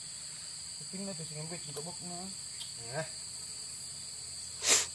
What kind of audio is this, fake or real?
real